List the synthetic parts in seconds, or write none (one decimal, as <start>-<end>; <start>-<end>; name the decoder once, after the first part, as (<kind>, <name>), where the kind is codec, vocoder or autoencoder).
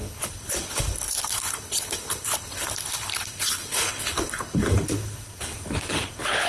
0.0-6.5 (codec, HILCodec)